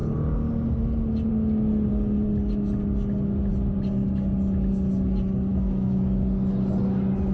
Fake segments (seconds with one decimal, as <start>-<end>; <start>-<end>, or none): 5.5-6.0